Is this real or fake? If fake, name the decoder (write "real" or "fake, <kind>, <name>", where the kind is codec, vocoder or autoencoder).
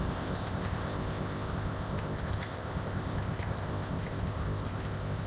fake, codec, ZipCodec